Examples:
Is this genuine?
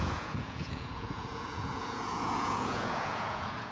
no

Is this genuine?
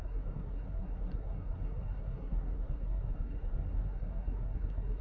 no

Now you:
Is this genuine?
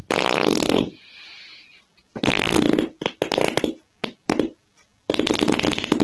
yes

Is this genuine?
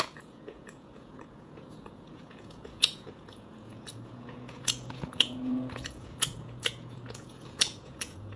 no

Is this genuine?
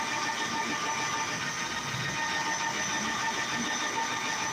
yes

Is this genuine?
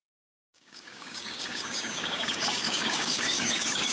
no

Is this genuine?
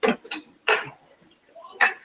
yes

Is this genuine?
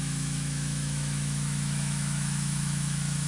no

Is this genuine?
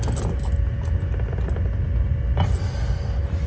yes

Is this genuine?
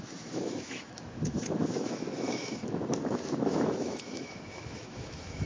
no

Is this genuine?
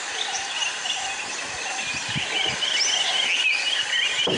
yes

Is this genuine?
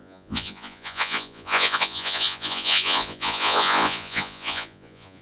no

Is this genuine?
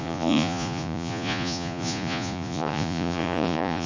no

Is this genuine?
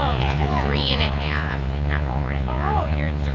no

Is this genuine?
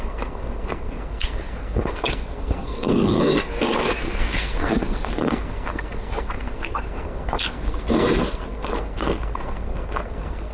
no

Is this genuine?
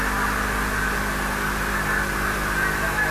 yes